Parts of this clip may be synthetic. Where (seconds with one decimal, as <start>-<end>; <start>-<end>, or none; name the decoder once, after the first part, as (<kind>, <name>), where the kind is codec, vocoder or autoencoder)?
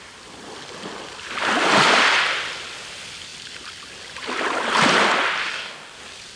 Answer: 5.5-6.0 (codec, DAC)